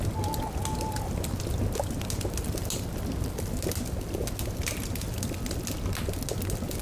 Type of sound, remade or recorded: recorded